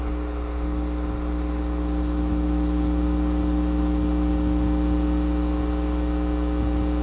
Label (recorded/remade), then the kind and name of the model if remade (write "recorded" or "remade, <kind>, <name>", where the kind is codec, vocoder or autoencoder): recorded